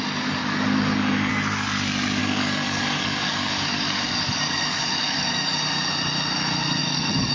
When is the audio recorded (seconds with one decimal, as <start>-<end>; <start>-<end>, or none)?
0.0-0.4; 1.3-2.2; 5.6-6.8